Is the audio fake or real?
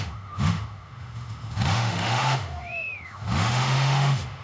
fake